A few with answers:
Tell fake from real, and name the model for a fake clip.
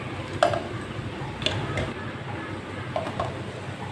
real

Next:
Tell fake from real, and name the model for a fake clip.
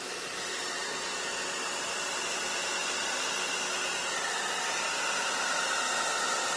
real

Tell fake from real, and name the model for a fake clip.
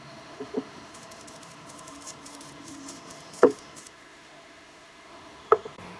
fake, autoencoder, DAC-VAE